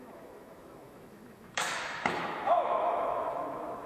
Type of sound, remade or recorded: remade